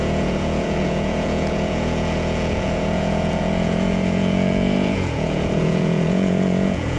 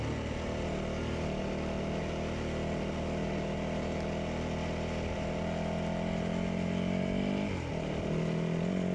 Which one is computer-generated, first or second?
first